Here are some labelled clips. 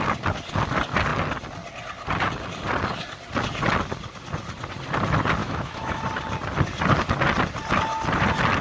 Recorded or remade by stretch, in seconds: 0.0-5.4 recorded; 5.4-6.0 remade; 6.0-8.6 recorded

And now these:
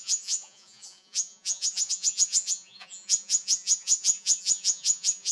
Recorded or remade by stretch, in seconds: 0.0-5.3 remade

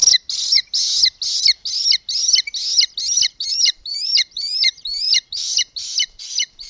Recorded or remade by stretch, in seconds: 0.0-3.2 recorded; 3.2-6.7 remade

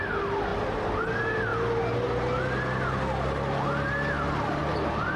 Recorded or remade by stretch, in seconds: 0.0-5.2 recorded

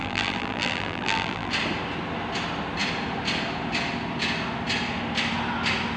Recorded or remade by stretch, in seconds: 0.0-1.5 remade; 1.5-6.0 recorded

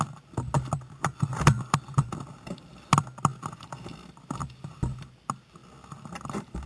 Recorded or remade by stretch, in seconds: 0.0-6.7 recorded

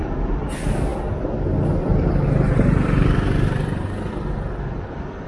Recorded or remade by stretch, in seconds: 0.0-5.3 recorded

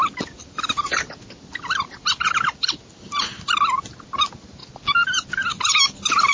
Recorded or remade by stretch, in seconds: 0.0-6.3 recorded